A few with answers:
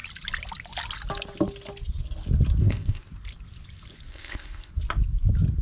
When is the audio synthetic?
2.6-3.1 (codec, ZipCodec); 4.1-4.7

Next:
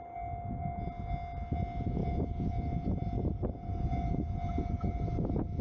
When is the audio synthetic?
2.0-5.6 (vocoder, Vocos)

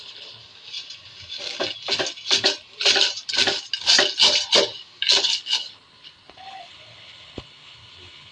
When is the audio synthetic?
0.0-0.4 (codec, HILCodec); 5.2-8.3

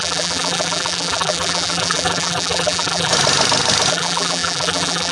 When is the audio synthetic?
0.0-3.1 (vocoder, BigVGAN v2); 3.9-5.1